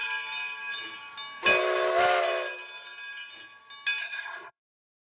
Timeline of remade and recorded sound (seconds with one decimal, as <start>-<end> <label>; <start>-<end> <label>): 0.0-4.0 recorded; 4.0-4.6 remade; 4.6-5.0 recorded